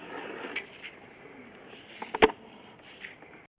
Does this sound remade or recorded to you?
recorded